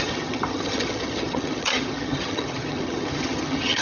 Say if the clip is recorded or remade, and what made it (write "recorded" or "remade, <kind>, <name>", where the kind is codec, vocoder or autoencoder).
remade, vocoder, HiFi-GAN